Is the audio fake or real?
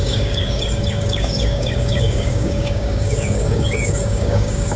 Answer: fake